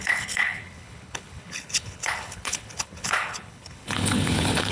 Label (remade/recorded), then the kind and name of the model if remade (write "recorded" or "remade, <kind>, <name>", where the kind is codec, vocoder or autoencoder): remade, codec, HILCodec